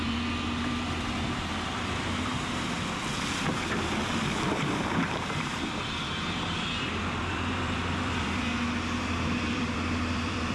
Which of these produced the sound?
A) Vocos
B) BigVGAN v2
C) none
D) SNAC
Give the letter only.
B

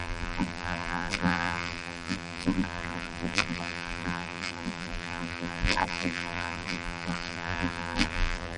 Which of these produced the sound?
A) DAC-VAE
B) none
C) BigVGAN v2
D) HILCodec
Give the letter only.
C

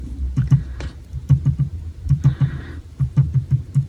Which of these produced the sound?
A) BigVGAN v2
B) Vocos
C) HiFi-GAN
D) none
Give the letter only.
A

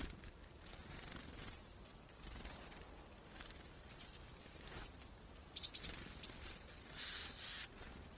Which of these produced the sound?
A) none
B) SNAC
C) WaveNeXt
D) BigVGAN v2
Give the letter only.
D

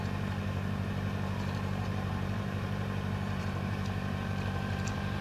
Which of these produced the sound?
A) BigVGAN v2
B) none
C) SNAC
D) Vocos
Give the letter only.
A